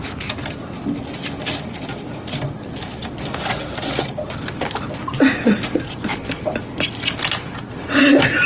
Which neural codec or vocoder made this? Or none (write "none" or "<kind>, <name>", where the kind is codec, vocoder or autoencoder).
vocoder, BigVGAN v2